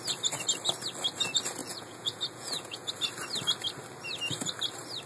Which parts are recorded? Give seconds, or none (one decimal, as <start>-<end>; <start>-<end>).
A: 0.0-1.6; 2.9-5.1